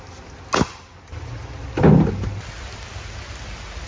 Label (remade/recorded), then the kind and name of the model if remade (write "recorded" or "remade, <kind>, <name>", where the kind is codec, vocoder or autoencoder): recorded